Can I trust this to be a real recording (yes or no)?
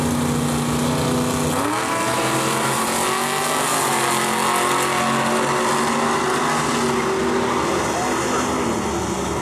yes